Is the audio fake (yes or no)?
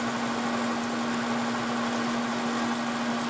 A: no